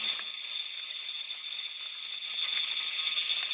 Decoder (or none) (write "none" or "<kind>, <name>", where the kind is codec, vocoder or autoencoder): none